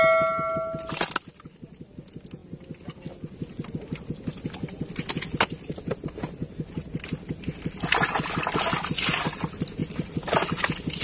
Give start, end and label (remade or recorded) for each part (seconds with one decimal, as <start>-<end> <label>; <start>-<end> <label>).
0.0-11.0 recorded